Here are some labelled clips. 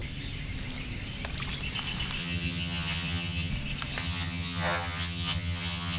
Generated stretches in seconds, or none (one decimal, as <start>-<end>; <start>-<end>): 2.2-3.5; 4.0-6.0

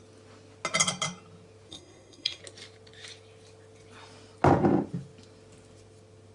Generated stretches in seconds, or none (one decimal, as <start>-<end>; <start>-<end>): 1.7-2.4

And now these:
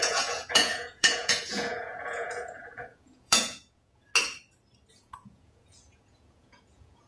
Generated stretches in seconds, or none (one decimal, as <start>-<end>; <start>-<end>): 0.0-4.1; 4.9-7.1